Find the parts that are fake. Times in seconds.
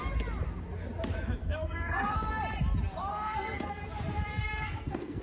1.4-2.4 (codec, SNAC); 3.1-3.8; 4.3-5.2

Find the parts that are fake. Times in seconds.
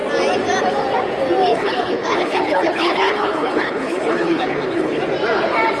1.5-5.0 (codec, HILCodec)